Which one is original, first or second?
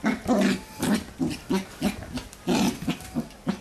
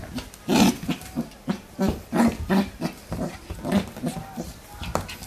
first